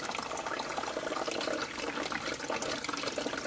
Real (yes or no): yes